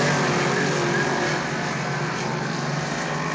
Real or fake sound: real